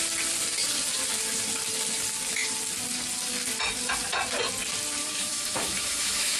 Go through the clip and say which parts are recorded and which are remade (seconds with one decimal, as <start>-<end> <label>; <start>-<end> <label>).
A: 0.0-5.0 recorded; 5.0-6.4 remade

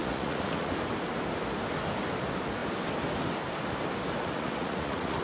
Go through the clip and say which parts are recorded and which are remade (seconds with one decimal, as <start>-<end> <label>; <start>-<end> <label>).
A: 0.0-0.7 remade; 0.7-4.2 recorded; 4.2-5.2 remade

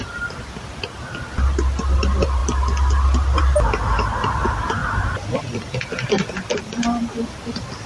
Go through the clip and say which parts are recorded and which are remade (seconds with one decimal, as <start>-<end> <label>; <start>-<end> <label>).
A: 0.0-2.4 recorded; 2.4-3.4 remade; 3.4-4.8 recorded; 4.8-5.4 remade; 5.4-7.9 recorded

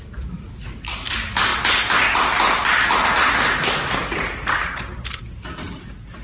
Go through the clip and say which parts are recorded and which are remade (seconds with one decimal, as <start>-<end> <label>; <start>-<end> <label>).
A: 0.0-6.2 recorded

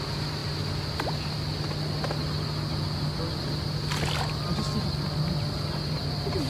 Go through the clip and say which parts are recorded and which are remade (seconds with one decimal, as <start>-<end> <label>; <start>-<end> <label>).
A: 0.0-6.5 recorded

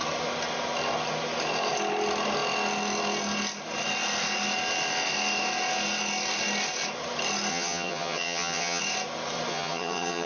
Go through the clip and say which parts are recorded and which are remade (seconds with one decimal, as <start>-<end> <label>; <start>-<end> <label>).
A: 0.0-7.5 recorded; 7.5-8.8 remade; 8.8-9.5 recorded; 9.5-10.3 remade

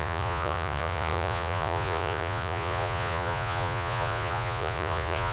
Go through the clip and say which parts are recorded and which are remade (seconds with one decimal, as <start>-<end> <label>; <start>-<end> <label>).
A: 0.0-5.3 remade

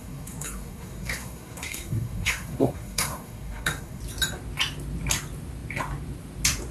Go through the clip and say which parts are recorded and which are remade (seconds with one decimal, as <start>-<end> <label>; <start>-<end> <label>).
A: 0.0-4.0 remade; 4.0-6.7 recorded